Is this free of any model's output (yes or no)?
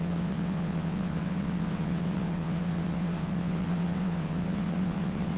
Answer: no